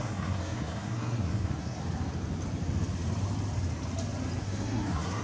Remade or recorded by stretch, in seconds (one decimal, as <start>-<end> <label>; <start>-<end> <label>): 0.0-1.8 remade; 1.8-4.4 recorded; 4.4-5.2 remade